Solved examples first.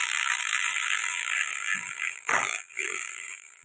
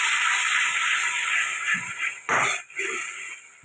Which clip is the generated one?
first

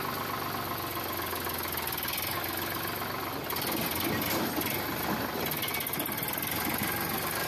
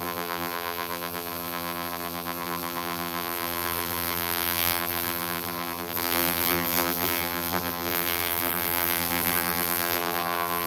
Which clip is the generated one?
second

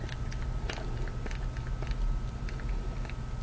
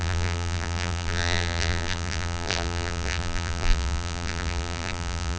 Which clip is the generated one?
second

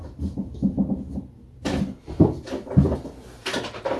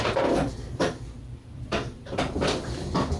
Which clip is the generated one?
second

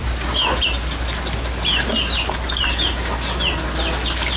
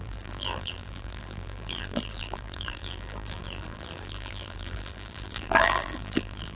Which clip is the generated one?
second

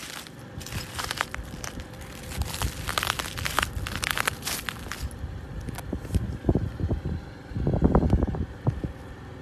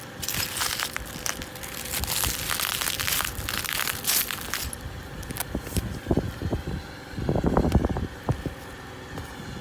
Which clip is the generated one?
first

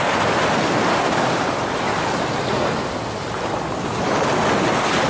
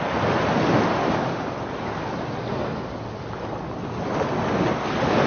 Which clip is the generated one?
first